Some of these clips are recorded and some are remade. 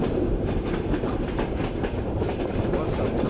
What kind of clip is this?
remade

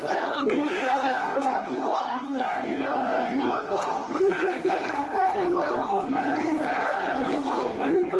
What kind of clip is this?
remade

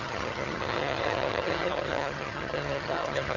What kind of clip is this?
remade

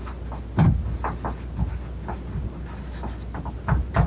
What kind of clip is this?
recorded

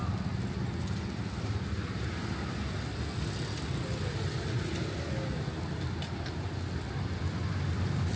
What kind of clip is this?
recorded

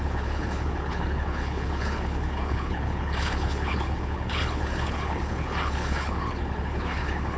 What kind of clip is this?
remade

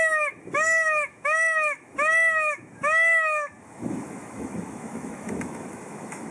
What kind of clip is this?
remade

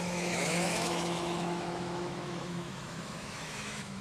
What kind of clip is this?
remade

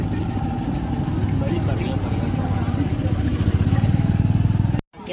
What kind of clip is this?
recorded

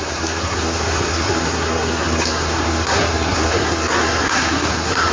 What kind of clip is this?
remade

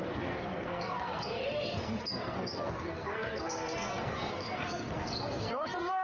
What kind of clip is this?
remade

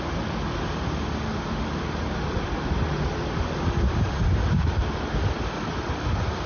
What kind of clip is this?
recorded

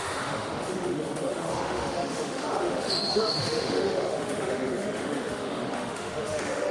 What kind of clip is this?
remade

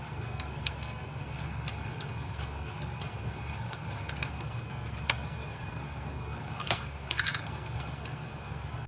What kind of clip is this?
remade